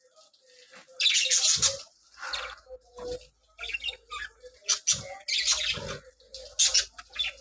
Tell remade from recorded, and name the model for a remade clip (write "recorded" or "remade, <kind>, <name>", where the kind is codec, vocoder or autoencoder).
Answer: recorded